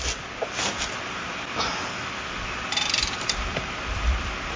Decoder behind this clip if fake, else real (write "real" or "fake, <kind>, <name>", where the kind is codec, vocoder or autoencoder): real